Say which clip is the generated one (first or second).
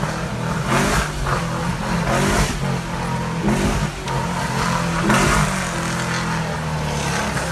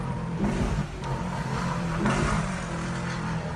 second